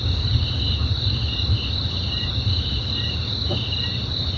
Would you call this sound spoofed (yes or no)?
no